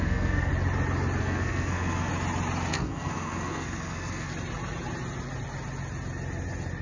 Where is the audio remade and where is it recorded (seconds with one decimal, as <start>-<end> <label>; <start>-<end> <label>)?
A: 0.0-0.5 remade; 0.5-1.2 recorded; 1.2-2.1 remade; 2.1-2.7 recorded; 2.7-4.3 remade; 4.3-6.8 recorded